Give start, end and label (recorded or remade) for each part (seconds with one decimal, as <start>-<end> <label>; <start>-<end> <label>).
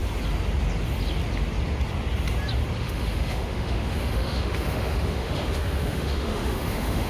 0.0-2.8 recorded; 2.8-7.1 remade